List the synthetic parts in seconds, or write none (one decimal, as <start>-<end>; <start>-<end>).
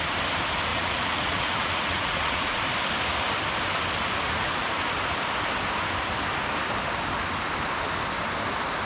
0.7-2.6